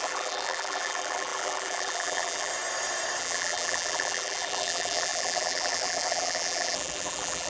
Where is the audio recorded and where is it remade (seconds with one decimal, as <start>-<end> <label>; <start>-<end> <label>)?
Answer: 0.0-2.5 remade; 2.5-3.2 recorded; 3.2-7.5 remade

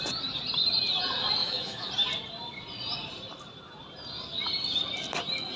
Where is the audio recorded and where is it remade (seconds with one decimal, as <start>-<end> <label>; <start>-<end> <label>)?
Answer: 0.0-1.4 recorded; 1.4-1.9 remade; 1.9-5.6 recorded

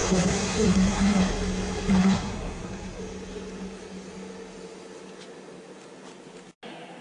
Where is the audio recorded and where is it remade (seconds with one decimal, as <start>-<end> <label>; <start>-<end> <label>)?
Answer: 0.0-1.2 remade; 1.2-2.0 recorded; 2.0-3.0 remade; 3.0-7.0 recorded